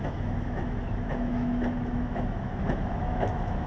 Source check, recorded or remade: remade